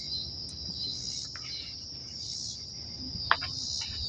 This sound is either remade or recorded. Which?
recorded